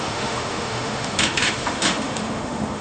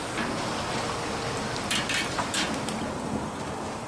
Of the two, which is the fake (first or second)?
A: first